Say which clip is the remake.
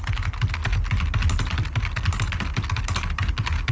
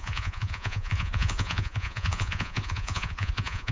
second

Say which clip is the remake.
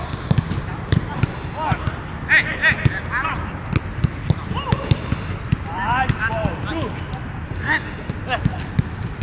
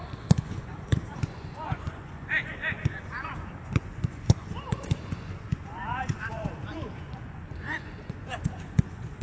second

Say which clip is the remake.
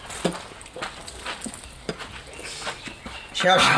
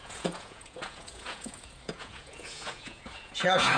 second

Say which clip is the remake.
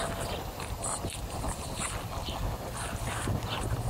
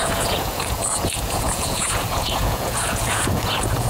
second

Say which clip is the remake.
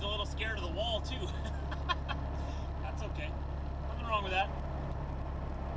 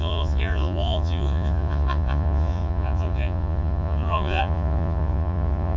second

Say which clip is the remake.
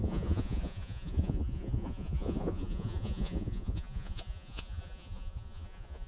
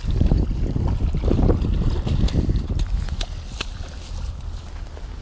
first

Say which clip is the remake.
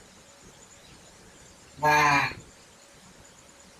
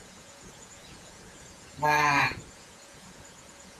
second